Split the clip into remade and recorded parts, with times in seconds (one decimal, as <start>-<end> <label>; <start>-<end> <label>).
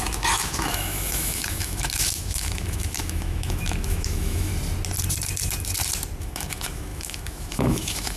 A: 0.0-4.5 remade; 4.5-6.2 recorded; 6.2-8.2 remade